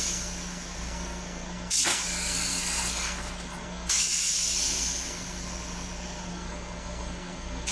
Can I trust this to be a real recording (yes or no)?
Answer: no